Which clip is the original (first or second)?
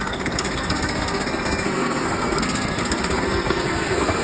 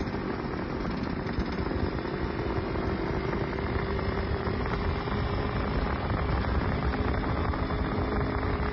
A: second